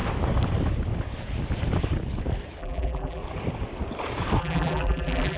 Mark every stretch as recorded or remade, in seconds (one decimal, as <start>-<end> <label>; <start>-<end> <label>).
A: 0.0-2.6 recorded; 2.6-3.2 remade; 3.2-4.4 recorded; 4.4-5.4 remade